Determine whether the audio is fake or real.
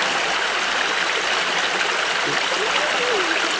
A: real